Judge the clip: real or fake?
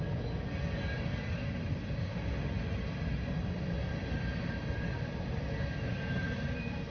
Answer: real